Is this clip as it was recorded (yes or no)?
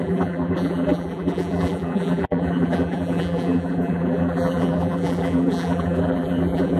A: no